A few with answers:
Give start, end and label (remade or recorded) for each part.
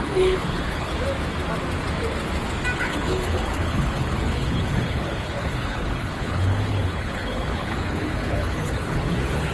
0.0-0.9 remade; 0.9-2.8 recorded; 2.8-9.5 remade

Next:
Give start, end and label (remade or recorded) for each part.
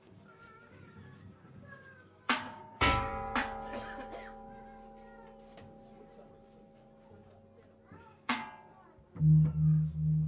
0.0-3.1 remade; 3.1-8.0 recorded; 8.0-8.4 remade; 8.4-9.2 recorded; 9.2-10.3 remade